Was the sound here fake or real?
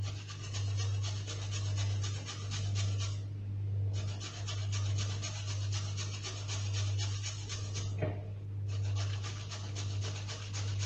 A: real